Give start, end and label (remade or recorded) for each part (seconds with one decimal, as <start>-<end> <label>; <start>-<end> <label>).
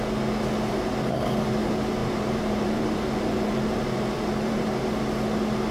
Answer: 0.0-2.0 recorded; 2.0-4.7 remade; 4.7-5.7 recorded